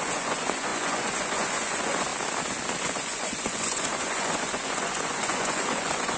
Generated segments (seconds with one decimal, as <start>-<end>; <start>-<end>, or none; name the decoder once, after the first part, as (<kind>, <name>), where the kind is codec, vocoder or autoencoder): 0.0-2.1 (vocoder, Vocos); 2.8-6.2